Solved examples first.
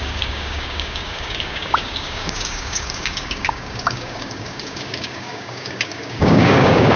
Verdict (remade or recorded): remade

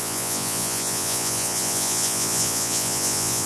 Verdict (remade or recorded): remade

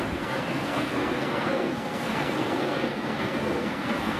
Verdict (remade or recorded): remade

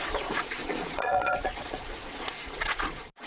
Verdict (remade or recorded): remade